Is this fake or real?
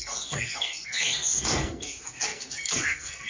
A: fake